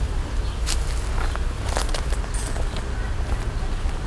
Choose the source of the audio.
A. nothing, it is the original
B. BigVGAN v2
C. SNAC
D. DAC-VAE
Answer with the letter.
A